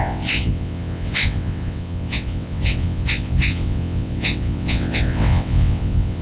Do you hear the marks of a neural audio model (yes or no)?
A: yes